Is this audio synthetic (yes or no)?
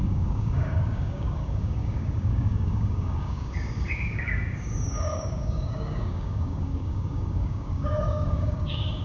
yes